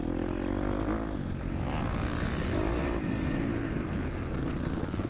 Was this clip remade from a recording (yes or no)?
no